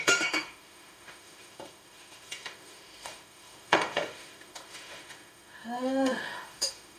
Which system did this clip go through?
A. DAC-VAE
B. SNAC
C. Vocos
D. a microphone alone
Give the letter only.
A